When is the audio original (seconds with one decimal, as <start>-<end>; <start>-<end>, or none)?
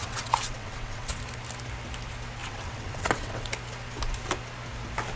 1.2-2.4; 3.5-5.2